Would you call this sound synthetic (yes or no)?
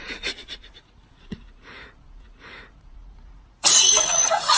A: yes